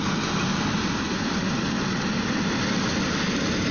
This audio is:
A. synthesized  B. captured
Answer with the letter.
B